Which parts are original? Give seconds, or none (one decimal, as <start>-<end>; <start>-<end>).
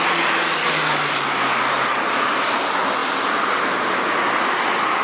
0.0-0.6; 2.1-5.0